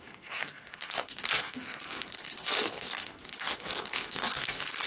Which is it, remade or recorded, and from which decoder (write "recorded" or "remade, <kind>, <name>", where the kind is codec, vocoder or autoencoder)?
remade, codec, SNAC